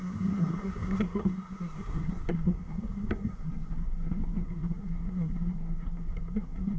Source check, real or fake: fake